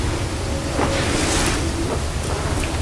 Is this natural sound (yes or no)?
yes